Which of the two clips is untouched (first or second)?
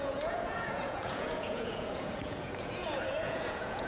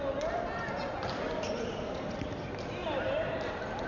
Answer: second